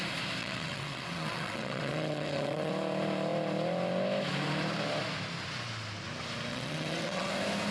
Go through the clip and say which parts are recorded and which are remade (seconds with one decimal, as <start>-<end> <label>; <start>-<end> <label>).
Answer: 0.0-0.4 recorded; 0.4-2.7 remade; 2.7-6.5 recorded; 6.5-7.3 remade; 7.3-7.7 recorded